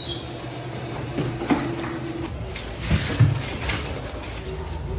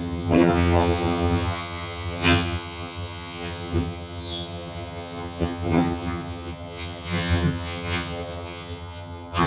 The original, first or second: first